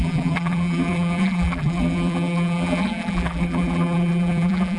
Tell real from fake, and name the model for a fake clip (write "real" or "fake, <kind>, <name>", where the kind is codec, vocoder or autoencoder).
fake, vocoder, BigVGAN v2